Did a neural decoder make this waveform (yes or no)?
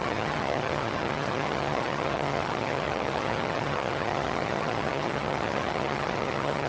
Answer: yes